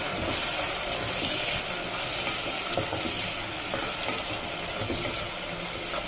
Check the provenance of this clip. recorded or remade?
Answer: recorded